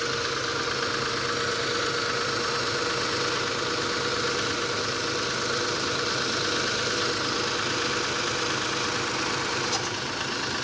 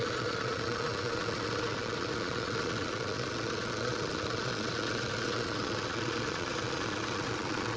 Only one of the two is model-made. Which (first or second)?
second